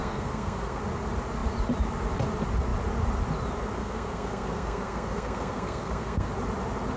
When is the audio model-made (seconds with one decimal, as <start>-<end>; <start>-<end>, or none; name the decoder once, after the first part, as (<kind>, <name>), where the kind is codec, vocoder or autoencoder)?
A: 0.0-0.8 (codec, SNAC); 3.8-6.3